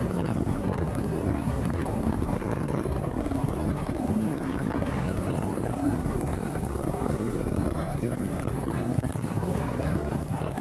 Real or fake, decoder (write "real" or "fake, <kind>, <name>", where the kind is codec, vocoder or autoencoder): fake, codec, SNAC